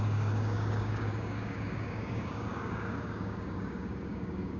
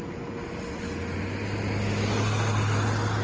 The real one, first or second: second